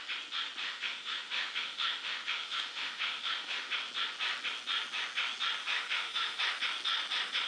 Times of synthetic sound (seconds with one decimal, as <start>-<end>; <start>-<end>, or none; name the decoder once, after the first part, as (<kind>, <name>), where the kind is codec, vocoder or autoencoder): 0.6-3.7 (autoencoder, DAC-VAE); 5.6-6.4